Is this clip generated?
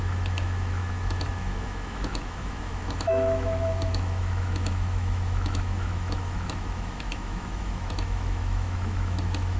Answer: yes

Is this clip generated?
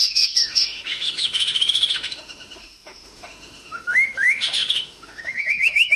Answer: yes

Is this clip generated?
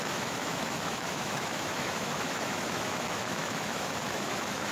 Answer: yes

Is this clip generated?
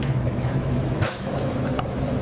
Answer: yes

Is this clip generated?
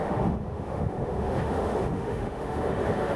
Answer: yes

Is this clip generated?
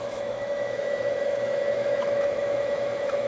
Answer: yes